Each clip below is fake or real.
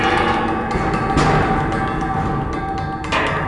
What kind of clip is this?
real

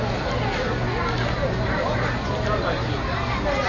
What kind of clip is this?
real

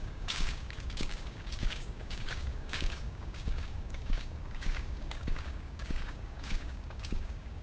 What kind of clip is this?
fake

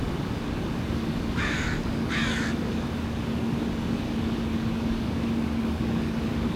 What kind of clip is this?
fake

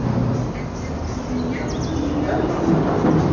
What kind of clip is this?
real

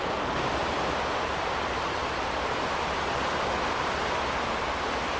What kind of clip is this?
real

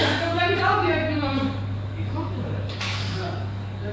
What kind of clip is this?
fake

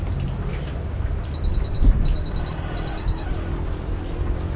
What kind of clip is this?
real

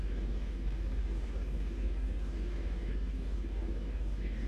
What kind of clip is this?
fake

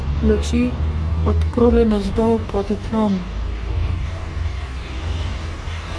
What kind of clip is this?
fake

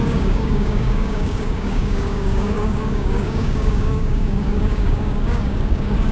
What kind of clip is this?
fake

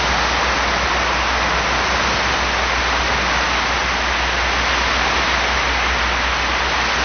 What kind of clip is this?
real